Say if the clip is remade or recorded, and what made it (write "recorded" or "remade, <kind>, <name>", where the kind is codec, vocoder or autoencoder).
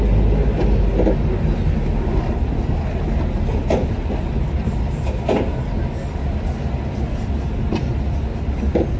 recorded